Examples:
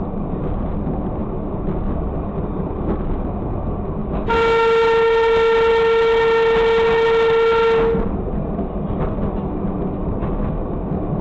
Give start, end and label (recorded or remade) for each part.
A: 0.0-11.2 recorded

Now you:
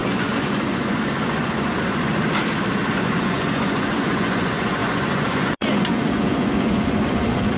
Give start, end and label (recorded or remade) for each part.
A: 0.0-2.1 remade; 2.1-2.9 recorded; 2.9-7.6 remade

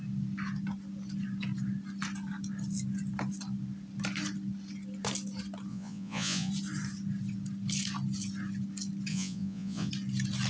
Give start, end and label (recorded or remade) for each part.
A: 0.0-5.7 recorded; 5.7-6.5 remade; 6.5-9.1 recorded; 9.1-9.9 remade; 9.9-10.5 recorded